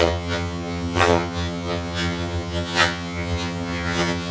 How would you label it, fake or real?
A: fake